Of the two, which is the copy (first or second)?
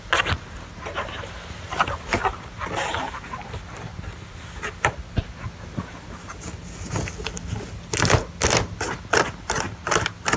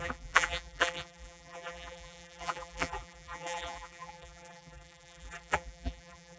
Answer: second